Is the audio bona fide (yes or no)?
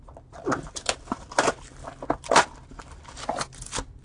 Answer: no